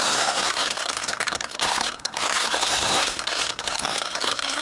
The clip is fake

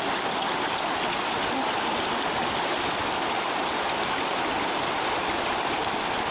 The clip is real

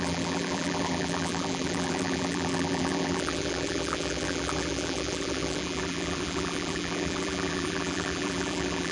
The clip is fake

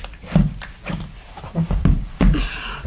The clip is real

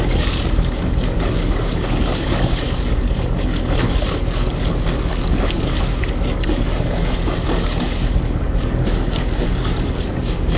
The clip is fake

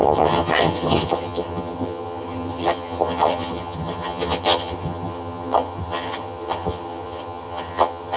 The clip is fake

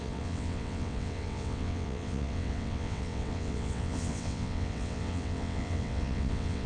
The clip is fake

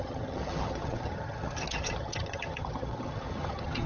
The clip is fake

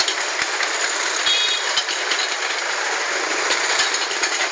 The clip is real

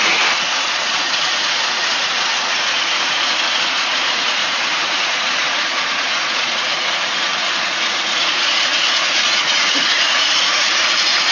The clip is fake